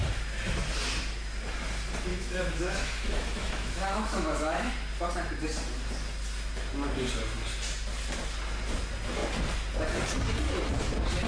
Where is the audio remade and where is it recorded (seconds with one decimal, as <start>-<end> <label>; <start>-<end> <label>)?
0.0-2.1 recorded; 2.1-4.7 remade; 4.7-11.3 recorded